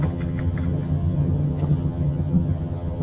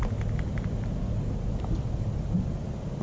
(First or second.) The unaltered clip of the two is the second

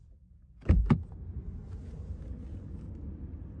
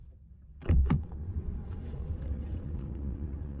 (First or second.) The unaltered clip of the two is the first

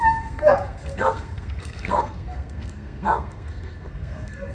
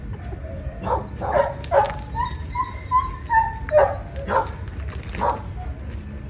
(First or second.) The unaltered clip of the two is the second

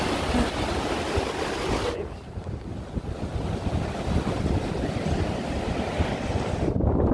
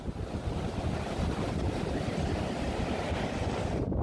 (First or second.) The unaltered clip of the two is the first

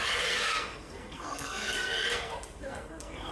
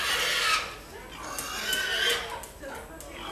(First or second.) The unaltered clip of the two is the second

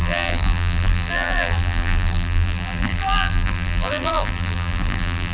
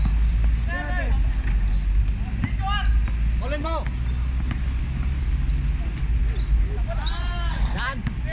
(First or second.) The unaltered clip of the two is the second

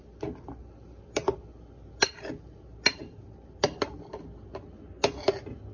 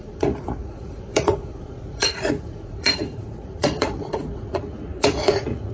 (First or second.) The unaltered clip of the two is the first